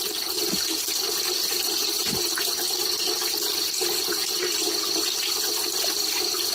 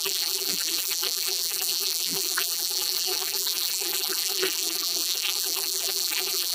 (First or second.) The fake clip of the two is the second